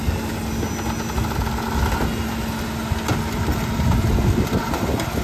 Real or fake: real